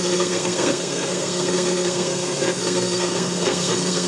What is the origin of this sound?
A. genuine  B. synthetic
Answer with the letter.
B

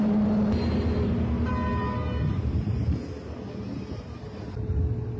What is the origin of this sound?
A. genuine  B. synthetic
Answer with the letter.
A